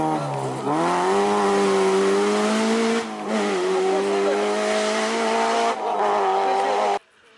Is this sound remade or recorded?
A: recorded